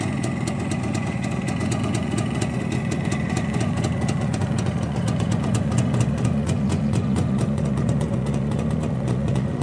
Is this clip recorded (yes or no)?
no